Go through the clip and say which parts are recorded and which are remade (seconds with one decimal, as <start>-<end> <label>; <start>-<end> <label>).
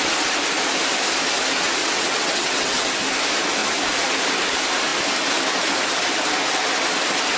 0.0-1.8 recorded; 1.8-2.9 remade; 2.9-7.4 recorded